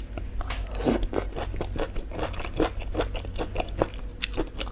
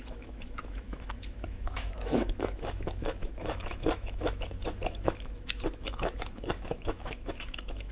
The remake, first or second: second